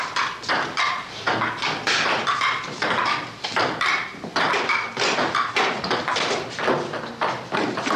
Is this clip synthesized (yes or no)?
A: no